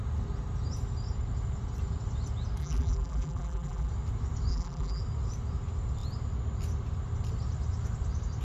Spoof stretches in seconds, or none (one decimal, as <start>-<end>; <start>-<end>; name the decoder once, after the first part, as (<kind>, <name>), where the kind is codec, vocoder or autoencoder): 2.6-3.9 (vocoder, BigVGAN v2); 4.5-5.0